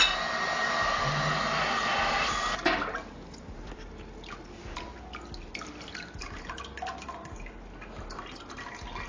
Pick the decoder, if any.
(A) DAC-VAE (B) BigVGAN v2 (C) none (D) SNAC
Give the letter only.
C